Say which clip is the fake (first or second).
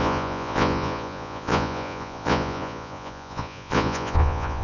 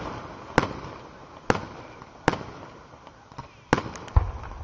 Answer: first